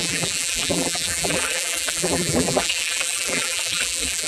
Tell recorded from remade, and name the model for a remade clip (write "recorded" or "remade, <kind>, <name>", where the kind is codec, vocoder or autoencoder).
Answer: remade, vocoder, BigVGAN v2